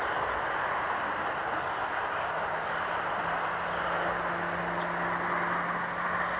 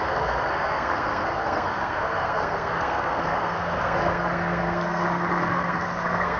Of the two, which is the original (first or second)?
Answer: first